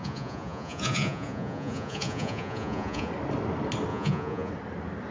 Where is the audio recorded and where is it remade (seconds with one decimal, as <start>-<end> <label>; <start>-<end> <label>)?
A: 0.0-3.1 remade; 3.1-3.9 recorded; 3.9-4.5 remade; 4.5-5.1 recorded